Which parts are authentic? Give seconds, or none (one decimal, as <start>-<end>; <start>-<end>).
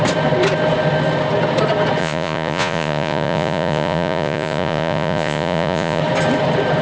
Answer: 0.0-2.0; 6.0-6.8